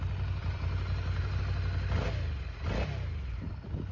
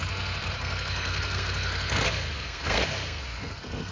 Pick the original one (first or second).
first